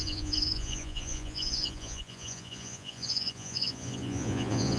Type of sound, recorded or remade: remade